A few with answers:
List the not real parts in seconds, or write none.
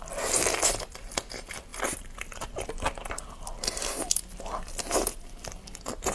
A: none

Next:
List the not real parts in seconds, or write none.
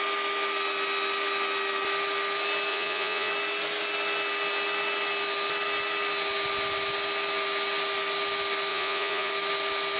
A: 2.7-3.3 (vocoder, Vocos); 8.7-9.3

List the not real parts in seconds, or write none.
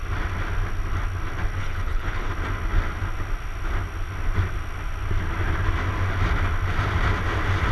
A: 1.6-2.3 (codec, HILCodec)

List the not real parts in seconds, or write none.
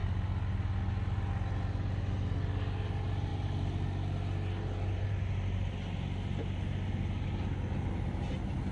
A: none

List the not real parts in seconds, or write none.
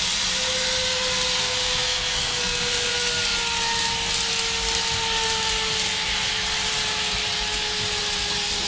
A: 1.4-2.9 (codec, SNAC)